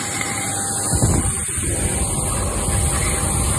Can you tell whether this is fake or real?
real